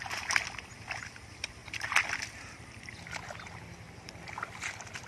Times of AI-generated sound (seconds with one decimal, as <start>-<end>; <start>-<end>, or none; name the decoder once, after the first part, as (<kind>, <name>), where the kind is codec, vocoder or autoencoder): none